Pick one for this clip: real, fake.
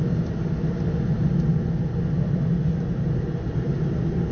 real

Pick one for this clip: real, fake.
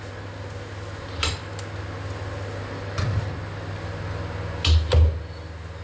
real